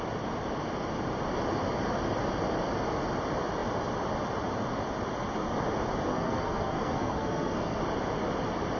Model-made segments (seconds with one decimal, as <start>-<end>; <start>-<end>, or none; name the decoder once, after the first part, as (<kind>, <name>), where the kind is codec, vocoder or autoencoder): 6.1-7.8 (codec, SNAC)